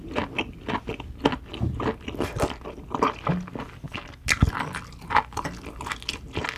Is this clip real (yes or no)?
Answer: yes